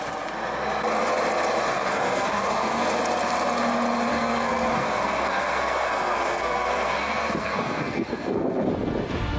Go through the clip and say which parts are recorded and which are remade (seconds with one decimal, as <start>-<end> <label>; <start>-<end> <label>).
0.0-1.7 recorded; 1.7-2.8 remade; 2.8-4.1 recorded; 4.1-8.7 remade; 8.7-9.4 recorded